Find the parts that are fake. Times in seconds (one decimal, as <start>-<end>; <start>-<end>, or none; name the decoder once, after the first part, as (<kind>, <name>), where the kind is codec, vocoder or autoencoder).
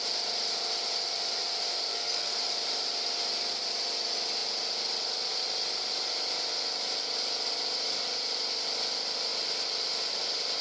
1.9-2.4 (codec, SNAC)